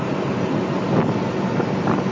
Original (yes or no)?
yes